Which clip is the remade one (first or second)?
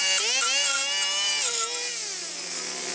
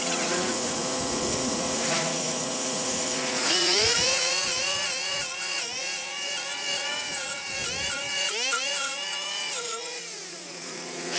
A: second